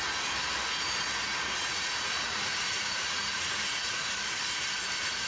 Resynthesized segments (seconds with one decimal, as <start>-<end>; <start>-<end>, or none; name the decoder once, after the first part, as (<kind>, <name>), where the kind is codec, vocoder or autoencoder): 1.4-4.1 (vocoder, Vocos)